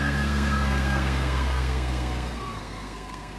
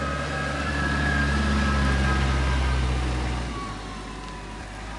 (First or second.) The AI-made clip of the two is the first